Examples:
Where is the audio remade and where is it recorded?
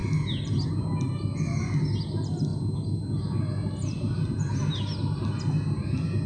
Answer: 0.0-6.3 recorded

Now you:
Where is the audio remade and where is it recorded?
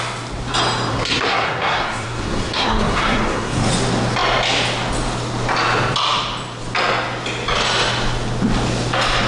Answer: 0.0-0.9 recorded; 0.9-3.7 remade; 3.7-9.3 recorded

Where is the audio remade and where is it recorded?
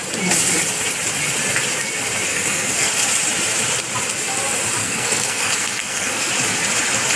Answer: 0.0-2.3 recorded; 2.3-2.9 remade; 2.9-4.8 recorded; 4.8-6.3 remade; 6.3-7.2 recorded